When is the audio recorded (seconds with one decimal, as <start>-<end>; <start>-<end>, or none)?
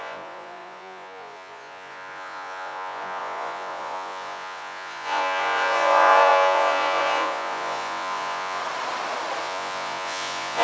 8.6-9.4